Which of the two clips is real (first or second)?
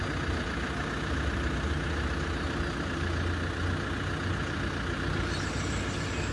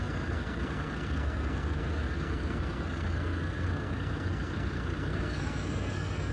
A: first